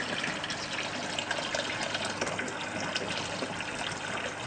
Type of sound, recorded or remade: recorded